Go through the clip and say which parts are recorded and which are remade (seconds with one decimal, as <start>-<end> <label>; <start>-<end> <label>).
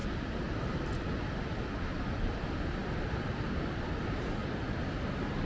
0.0-5.5 recorded